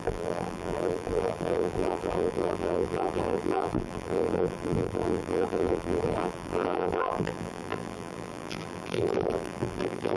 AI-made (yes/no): yes